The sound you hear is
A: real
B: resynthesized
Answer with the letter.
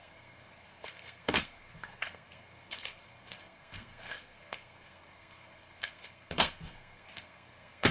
B